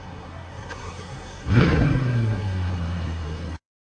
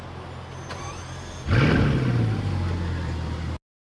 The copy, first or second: first